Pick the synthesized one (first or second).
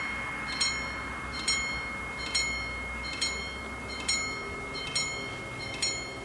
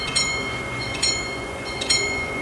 second